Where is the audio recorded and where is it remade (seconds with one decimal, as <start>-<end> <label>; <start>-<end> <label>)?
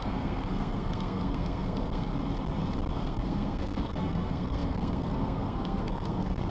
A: 0.0-2.1 remade; 2.1-2.9 recorded; 2.9-6.5 remade